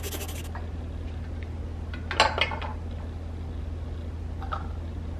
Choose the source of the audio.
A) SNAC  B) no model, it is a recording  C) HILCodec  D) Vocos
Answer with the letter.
B